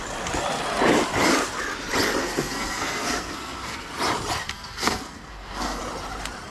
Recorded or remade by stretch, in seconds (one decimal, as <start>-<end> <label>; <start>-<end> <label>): 0.0-2.2 recorded; 2.2-3.9 remade; 3.9-4.4 recorded; 4.4-5.8 remade; 5.8-6.5 recorded